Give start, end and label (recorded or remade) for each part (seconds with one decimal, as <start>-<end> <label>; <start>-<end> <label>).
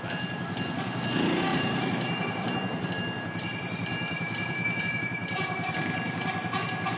0.0-1.5 recorded; 1.5-2.9 remade; 2.9-3.9 recorded; 3.9-4.8 remade; 4.8-7.0 recorded